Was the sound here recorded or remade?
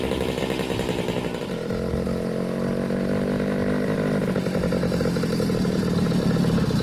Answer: recorded